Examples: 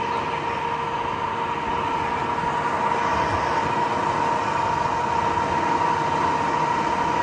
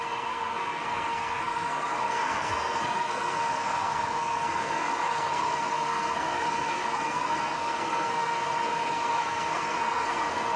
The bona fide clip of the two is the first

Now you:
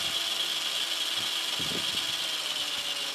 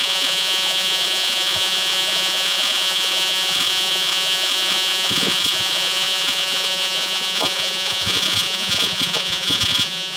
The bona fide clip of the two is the first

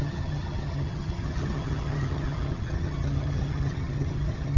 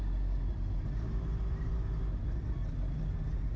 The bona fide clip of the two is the second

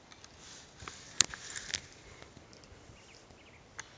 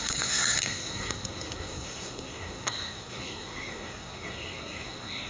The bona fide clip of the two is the first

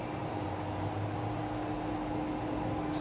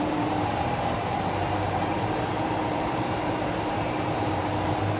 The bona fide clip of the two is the first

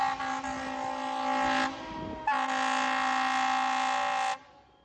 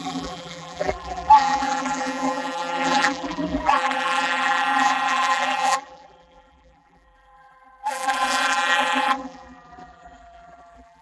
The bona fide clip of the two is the first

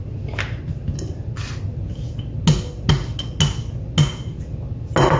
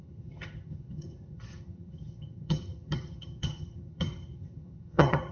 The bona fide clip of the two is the first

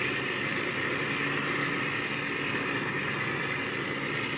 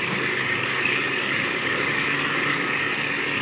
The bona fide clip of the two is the first